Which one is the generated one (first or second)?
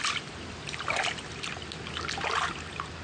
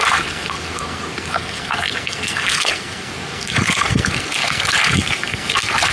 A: second